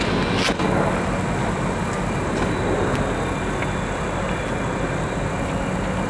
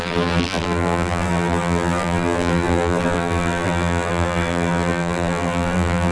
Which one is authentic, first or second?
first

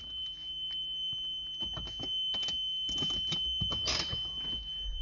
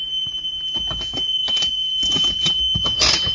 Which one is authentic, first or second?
first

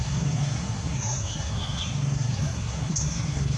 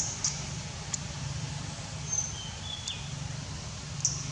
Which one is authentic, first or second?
second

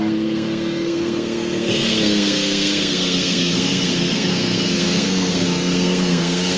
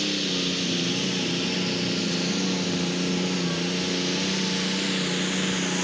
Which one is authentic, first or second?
second